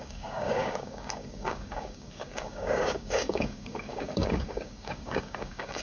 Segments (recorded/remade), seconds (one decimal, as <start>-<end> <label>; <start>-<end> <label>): 0.0-5.8 remade